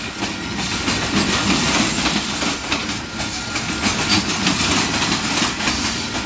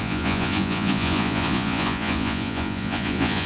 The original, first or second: first